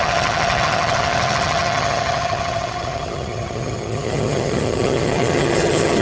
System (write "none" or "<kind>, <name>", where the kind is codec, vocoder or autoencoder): vocoder, HiFi-GAN